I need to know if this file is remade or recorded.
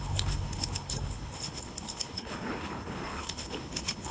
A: remade